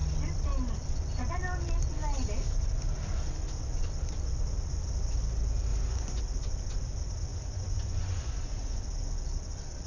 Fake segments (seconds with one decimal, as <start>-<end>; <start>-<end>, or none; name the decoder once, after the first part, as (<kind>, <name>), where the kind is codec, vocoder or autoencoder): 5.7-6.2 (vocoder, Vocos); 7.3-8.8